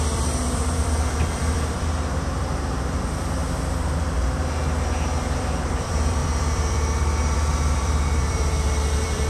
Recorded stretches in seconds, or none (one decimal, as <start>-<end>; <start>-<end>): 3.4-5.4